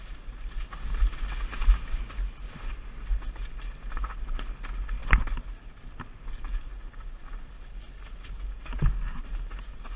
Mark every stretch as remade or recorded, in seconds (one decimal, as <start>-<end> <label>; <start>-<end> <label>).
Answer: 0.0-10.0 recorded